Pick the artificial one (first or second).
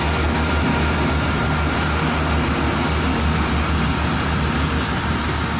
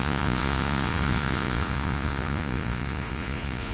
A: second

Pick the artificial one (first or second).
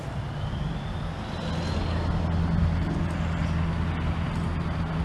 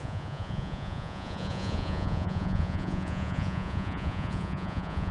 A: second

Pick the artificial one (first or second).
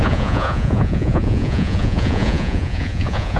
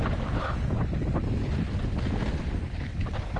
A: first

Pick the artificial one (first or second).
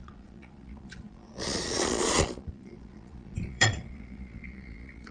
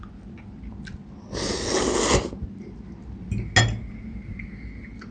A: first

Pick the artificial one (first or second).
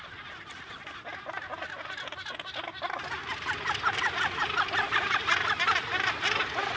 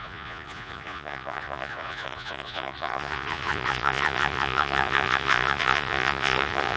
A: second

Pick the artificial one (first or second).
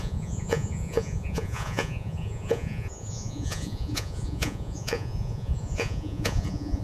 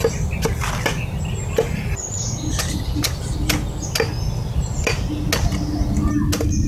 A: first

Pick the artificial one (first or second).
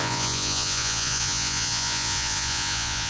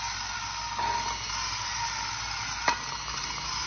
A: first